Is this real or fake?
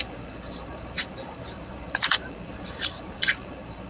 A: fake